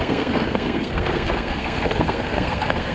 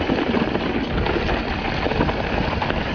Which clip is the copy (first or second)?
first